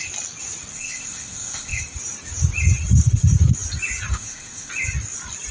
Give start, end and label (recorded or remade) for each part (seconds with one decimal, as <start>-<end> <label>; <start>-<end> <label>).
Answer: 0.0-0.7 recorded; 0.7-1.8 remade; 1.8-4.1 recorded; 4.1-4.7 remade; 4.7-5.5 recorded